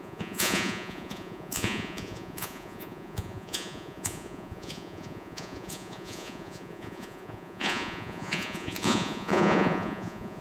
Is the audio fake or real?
fake